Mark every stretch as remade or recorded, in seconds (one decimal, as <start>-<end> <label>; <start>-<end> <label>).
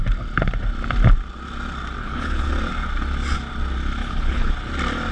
0.0-2.0 recorded; 2.0-2.5 remade; 2.5-4.0 recorded; 4.0-4.5 remade; 4.5-5.1 recorded